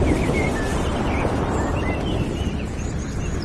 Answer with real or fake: real